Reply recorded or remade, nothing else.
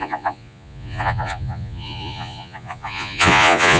remade